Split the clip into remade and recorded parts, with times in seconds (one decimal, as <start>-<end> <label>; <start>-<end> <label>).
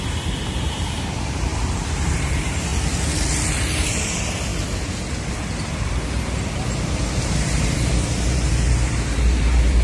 0.0-2.7 remade; 2.7-3.9 recorded; 3.9-4.5 remade; 4.5-5.3 recorded; 5.3-9.8 remade